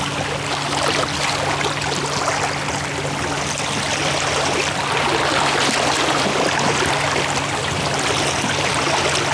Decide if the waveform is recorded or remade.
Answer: recorded